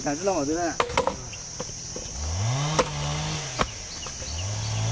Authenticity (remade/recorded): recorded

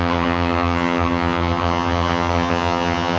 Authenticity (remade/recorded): remade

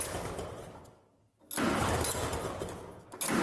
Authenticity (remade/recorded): recorded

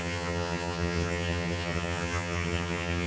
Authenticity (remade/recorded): remade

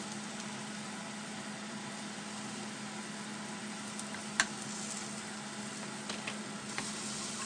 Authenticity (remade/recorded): recorded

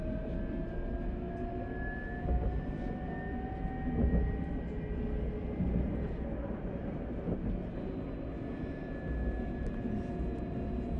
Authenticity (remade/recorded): recorded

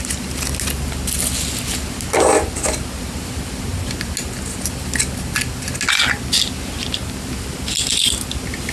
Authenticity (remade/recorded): recorded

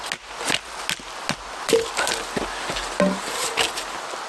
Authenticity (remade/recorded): recorded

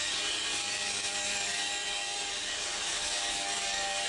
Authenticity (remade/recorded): remade